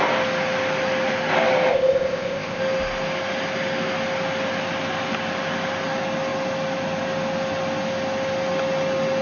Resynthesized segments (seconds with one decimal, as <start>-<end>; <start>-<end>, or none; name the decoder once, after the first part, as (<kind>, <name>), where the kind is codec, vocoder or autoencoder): 1.7-2.6 (codec, ZipCodec)